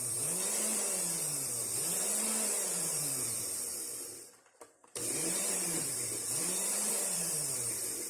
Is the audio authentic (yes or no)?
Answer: no